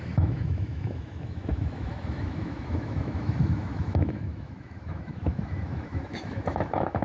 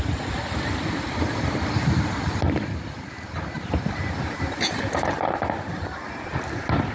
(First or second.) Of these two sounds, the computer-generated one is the first